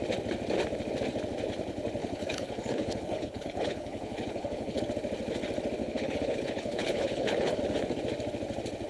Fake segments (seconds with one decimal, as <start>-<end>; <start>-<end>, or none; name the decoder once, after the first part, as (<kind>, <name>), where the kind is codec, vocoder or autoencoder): 2.0-4.8 (codec, HILCodec); 5.8-7.6